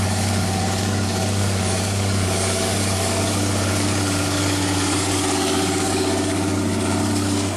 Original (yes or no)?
no